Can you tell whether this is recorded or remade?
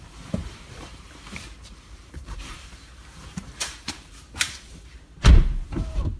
remade